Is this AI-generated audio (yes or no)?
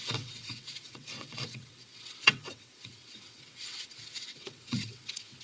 yes